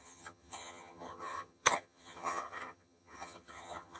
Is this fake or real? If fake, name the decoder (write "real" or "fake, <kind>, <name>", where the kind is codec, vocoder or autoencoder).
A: fake, vocoder, HiFi-GAN